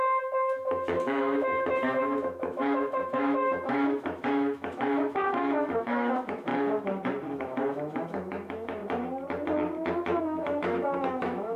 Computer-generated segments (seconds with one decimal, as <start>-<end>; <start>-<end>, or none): 0.0-6.5; 7.4-8.8; 10.2-11.6

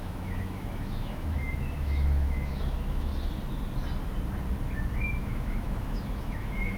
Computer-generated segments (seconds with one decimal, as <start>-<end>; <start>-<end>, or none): 0.0-3.1; 5.2-6.8